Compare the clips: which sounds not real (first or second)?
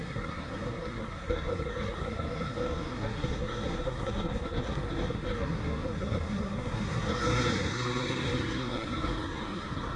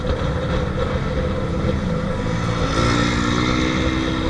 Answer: first